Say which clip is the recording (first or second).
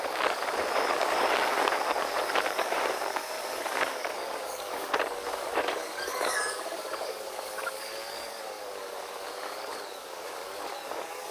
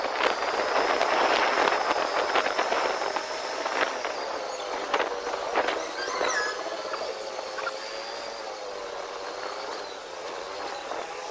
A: second